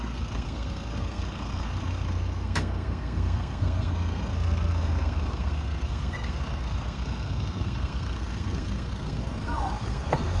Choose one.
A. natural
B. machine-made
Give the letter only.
B